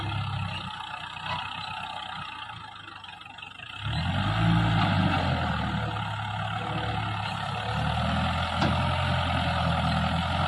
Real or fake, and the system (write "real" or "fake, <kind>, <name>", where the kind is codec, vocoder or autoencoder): real